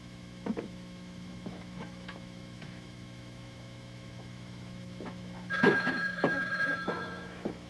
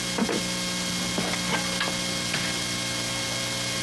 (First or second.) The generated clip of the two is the first